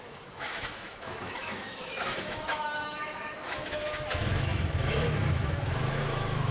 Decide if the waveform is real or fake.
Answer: fake